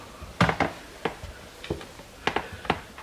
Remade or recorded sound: recorded